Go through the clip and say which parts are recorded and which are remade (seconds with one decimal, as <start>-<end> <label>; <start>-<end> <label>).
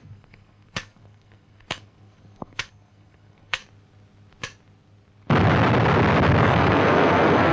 0.0-3.6 remade; 3.6-6.4 recorded; 6.4-7.5 remade